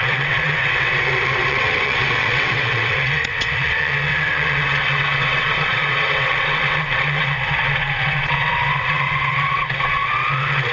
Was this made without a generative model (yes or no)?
no